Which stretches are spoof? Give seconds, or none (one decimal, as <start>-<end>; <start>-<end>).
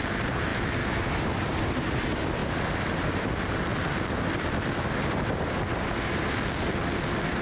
none